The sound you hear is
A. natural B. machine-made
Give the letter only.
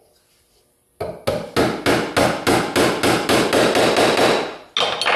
A